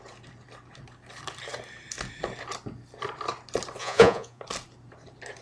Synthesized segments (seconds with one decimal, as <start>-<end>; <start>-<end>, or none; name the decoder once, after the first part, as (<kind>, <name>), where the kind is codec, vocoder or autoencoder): 3.8-4.4 (vocoder, Vocos)